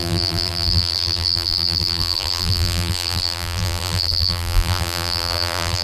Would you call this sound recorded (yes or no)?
no